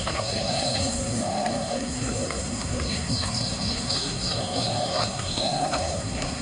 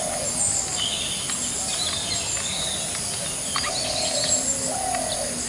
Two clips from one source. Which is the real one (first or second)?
second